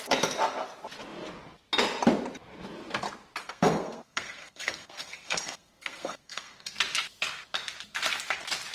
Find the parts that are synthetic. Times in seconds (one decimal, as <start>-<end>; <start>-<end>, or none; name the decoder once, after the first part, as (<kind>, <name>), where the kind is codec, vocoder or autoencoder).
3.4-6.7 (codec, SNAC)